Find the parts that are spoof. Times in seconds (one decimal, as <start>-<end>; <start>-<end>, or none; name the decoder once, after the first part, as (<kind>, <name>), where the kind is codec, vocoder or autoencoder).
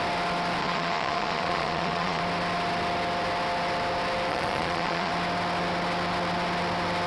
0.6-2.2 (vocoder, Vocos); 4.3-5.1